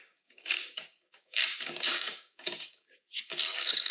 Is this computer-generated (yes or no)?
yes